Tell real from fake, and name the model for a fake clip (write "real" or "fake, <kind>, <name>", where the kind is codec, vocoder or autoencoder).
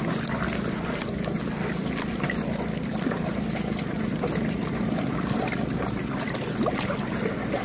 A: real